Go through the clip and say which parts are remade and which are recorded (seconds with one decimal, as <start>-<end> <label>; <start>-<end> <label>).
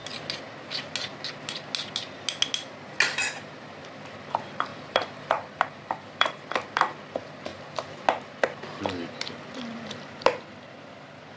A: 0.0-4.7 recorded; 4.7-6.7 remade; 6.7-11.4 recorded